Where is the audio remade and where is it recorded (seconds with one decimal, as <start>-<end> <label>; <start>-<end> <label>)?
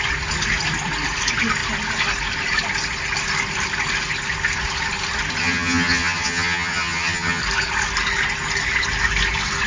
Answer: 0.0-5.4 recorded; 5.4-7.4 remade; 7.4-9.7 recorded